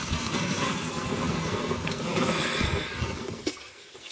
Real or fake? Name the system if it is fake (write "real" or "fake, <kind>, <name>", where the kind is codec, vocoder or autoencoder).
fake, codec, SNAC